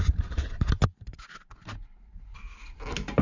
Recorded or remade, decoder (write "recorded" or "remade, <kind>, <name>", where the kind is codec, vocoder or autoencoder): recorded